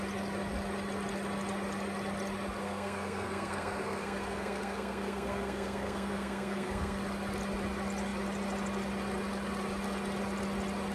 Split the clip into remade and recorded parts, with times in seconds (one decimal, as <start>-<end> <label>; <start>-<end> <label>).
0.0-2.6 recorded; 2.6-7.0 remade; 7.0-10.9 recorded